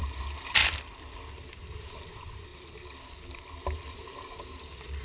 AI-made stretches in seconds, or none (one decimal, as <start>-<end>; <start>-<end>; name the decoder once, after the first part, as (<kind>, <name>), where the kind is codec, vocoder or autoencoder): 0.0-0.6 (vocoder, BigVGAN v2); 1.7-2.5; 4.0-5.0